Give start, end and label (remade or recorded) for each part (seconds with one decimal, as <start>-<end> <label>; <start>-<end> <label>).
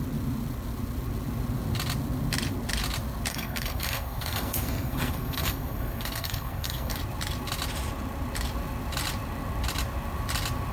0.0-3.3 recorded; 3.3-7.0 remade; 7.0-10.7 recorded